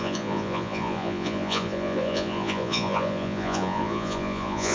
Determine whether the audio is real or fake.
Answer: fake